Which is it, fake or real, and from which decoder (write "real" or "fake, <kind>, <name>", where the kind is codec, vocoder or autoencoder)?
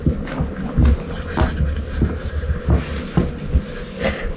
real